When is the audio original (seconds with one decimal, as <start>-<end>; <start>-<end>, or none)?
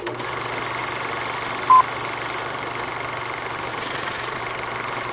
0.0-3.7; 4.4-5.1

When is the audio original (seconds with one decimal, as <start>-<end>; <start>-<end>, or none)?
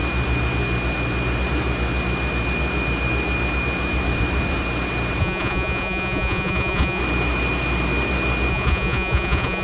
0.0-5.2; 7.0-8.5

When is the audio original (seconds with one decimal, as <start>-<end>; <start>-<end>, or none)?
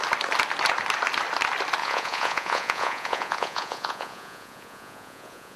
0.0-1.8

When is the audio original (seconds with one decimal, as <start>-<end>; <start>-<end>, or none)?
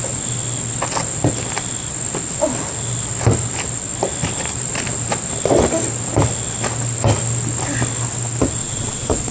0.0-8.6